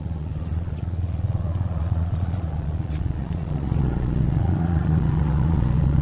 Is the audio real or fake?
fake